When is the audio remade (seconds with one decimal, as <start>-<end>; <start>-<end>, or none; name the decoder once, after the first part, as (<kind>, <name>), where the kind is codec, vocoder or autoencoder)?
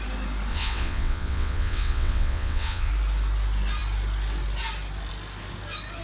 0.5-2.9 (vocoder, WaveNeXt)